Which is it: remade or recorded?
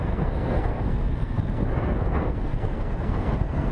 remade